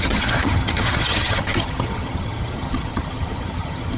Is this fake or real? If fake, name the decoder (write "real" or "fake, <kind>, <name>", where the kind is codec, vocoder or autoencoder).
fake, vocoder, HiFi-GAN